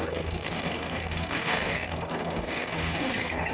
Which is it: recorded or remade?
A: remade